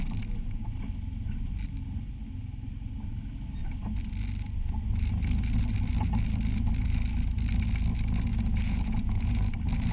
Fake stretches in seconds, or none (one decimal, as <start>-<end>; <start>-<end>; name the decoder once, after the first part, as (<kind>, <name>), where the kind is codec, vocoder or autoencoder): 8.3-9.5 (vocoder, Vocos)